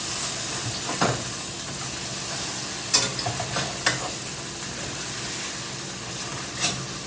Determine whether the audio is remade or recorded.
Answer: recorded